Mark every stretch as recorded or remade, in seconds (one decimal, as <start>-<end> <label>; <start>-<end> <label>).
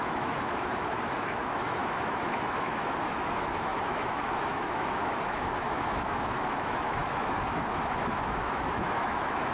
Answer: 0.0-9.5 remade